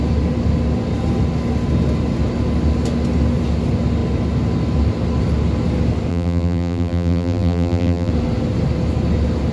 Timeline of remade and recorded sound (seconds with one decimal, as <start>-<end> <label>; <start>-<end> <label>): 0.0-6.1 recorded; 6.1-8.1 remade; 8.1-9.5 recorded